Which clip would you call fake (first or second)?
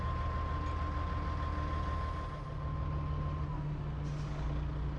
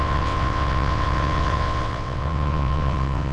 second